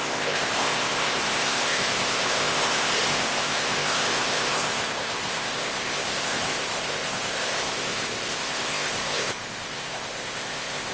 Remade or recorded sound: remade